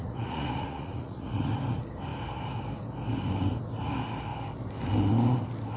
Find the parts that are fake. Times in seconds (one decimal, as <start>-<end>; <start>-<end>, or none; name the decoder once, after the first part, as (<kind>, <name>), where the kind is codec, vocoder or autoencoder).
0.0-1.5 (vocoder, Vocos)